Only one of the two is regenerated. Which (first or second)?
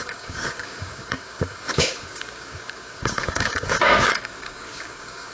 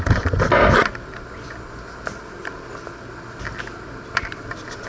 first